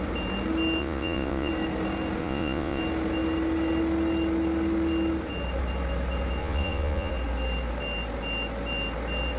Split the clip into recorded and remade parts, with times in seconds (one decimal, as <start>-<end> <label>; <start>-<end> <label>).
0.0-0.8 recorded; 0.8-1.5 remade; 1.5-2.2 recorded; 2.2-2.8 remade; 2.8-6.4 recorded; 6.4-7.1 remade; 7.1-9.4 recorded